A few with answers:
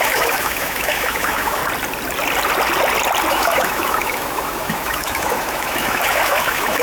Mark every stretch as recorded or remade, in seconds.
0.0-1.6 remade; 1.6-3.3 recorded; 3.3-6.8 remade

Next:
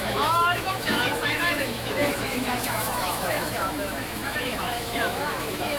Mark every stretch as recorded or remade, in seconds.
0.0-5.8 remade

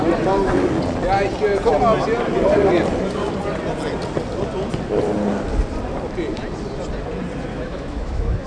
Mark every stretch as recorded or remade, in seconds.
0.0-7.5 recorded; 7.5-8.5 remade

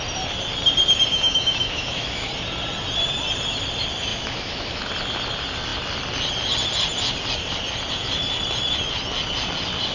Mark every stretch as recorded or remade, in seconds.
0.0-1.1 recorded; 1.1-2.3 remade; 2.3-4.1 recorded; 4.1-4.9 remade; 4.9-9.9 recorded

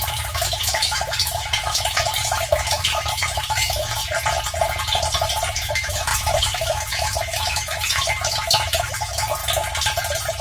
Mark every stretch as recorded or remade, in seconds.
0.0-4.0 remade; 4.0-5.5 recorded; 5.5-9.4 remade; 9.4-10.4 recorded

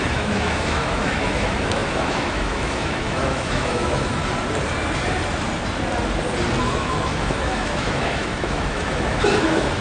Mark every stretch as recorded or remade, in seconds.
0.0-4.2 remade; 4.2-6.6 recorded; 6.6-9.8 remade